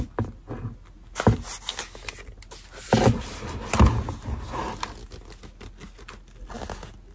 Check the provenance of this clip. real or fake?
real